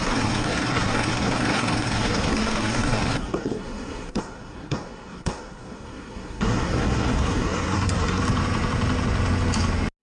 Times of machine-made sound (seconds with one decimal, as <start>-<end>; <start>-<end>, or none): 0.0-8.2